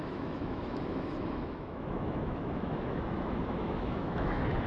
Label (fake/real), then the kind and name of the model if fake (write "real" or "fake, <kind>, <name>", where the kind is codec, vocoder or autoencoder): fake, autoencoder, DAC-VAE